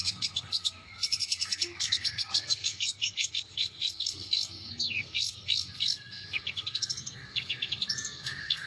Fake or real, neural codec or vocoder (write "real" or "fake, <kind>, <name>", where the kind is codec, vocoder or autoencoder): fake, codec, SNAC